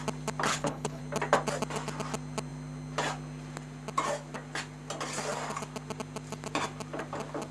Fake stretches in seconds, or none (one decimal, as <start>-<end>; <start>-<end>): 0.5-1.0